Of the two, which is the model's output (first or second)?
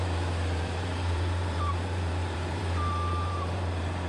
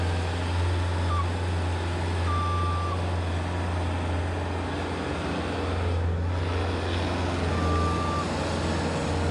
first